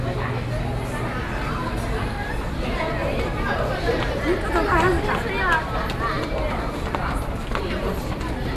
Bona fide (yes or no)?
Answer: yes